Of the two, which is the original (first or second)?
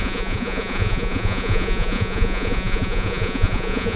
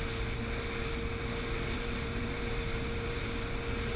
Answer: second